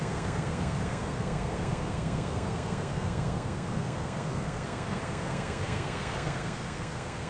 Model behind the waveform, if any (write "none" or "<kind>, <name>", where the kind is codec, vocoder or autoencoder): codec, SNAC